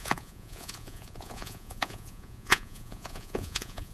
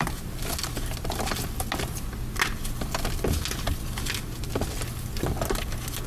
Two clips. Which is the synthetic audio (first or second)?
first